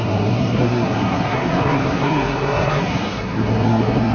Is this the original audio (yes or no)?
no